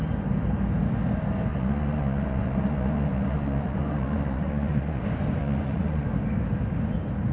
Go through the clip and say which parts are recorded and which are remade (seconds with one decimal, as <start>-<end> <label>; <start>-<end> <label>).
0.0-1.5 recorded; 1.5-5.0 remade; 5.0-5.4 recorded; 5.4-6.1 remade; 6.1-7.3 recorded